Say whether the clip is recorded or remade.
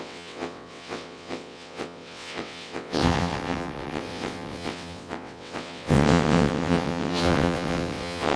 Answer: remade